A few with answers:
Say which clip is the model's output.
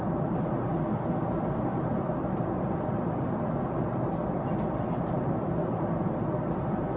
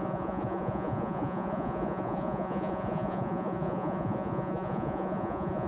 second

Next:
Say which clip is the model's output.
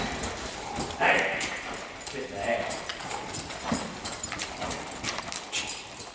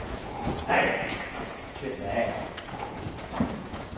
second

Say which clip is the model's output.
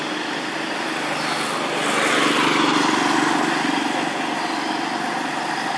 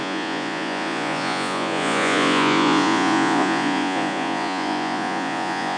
second